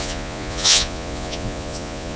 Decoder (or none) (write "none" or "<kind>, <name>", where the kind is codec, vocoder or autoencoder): vocoder, Vocos